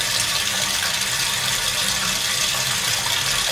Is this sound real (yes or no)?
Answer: no